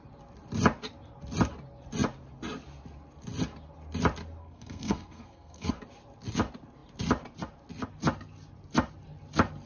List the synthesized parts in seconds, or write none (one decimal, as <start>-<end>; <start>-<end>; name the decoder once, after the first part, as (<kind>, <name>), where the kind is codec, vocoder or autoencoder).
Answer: 4.4-5.7 (codec, SNAC)